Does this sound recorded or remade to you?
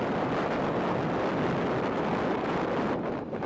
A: recorded